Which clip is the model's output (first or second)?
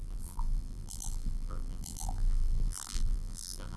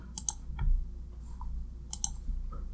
first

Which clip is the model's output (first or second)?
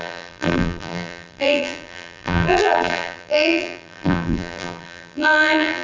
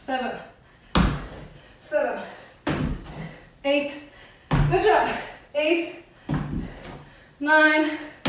first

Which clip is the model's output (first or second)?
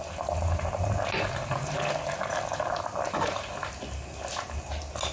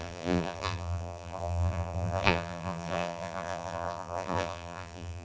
second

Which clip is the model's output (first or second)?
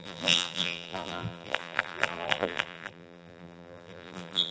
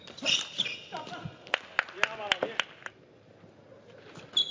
first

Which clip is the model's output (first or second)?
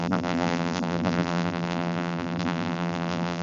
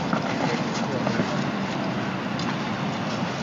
first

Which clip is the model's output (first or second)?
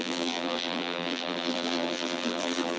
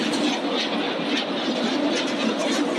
first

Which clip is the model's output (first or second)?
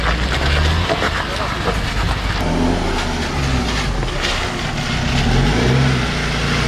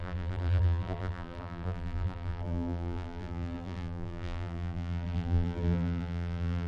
second